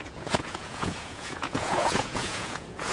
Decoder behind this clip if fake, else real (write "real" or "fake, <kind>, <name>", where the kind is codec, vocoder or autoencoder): fake, vocoder, Vocos